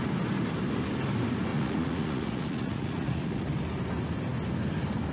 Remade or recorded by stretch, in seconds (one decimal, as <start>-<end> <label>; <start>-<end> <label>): 0.0-1.5 recorded; 1.5-3.5 remade; 3.5-5.1 recorded